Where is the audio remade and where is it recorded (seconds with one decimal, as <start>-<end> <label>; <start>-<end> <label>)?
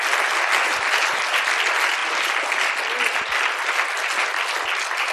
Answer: 0.0-5.1 recorded